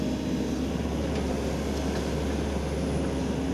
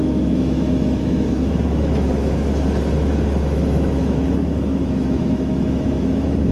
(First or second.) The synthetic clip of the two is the second